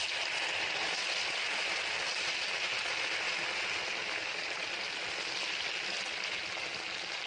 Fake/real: real